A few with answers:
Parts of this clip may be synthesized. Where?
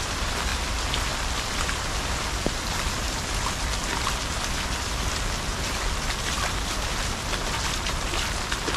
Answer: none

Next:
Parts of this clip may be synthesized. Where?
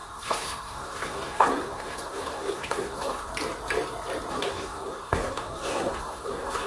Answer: 0.0-3.3; 4.3-6.7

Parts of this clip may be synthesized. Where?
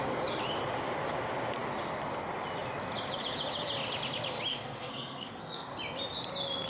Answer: 4.5-5.7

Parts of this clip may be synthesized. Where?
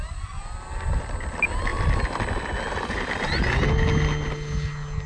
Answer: none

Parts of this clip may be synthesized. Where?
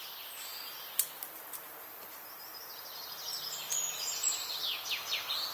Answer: none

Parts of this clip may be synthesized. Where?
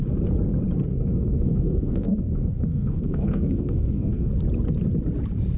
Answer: 0.9-4.3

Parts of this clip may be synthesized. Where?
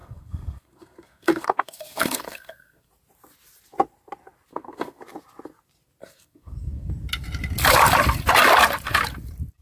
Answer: 0.0-2.9; 4.5-5.0; 6.0-6.9